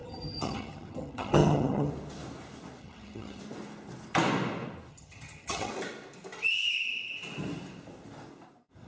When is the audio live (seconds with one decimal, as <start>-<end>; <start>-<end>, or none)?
1.9-2.8; 3.4-4.9; 5.7-8.9